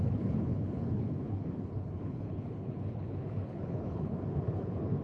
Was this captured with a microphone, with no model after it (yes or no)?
no